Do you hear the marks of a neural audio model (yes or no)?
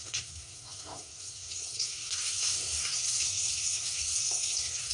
yes